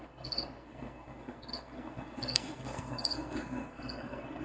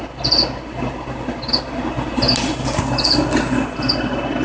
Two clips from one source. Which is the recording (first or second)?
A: second